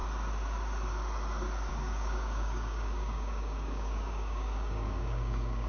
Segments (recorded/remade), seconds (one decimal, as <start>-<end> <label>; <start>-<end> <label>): 0.0-1.7 recorded; 1.7-5.7 remade

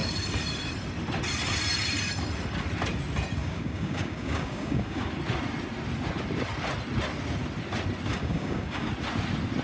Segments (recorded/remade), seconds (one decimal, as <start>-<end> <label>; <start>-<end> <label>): 0.0-3.4 recorded; 3.4-5.1 remade; 5.1-8.1 recorded; 8.1-8.9 remade; 8.9-9.6 recorded